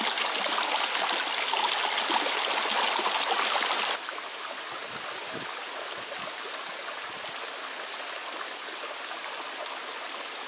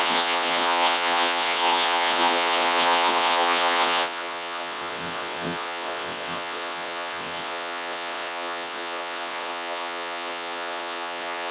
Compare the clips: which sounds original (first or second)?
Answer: first